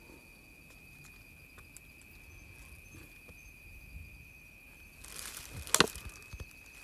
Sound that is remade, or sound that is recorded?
recorded